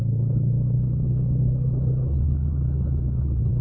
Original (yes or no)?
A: no